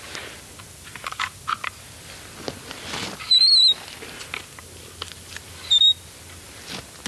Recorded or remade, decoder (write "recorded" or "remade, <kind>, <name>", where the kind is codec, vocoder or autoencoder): recorded